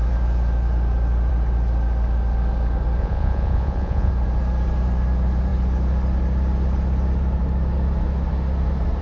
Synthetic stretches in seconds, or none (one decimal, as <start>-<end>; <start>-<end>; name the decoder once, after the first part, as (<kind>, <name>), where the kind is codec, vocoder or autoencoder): 3.0-4.1 (vocoder, Vocos)